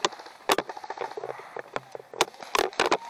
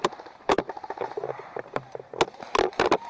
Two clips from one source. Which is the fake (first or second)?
second